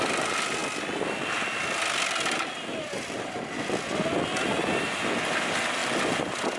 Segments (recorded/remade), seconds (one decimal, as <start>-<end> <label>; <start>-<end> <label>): 0.0-6.6 recorded